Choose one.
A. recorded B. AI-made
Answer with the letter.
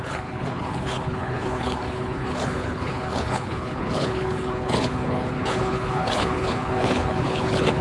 B